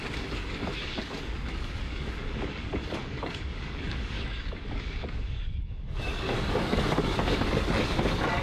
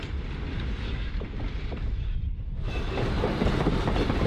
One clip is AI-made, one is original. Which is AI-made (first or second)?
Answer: first